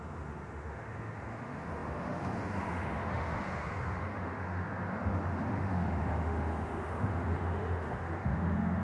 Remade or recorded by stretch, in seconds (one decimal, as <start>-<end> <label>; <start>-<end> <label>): 0.0-8.8 remade